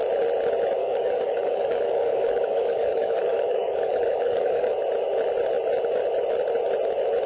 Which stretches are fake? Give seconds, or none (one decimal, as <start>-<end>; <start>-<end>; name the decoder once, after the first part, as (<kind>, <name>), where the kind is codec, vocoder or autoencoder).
0.8-4.7 (codec, DAC)